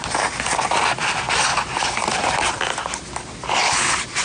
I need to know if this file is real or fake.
real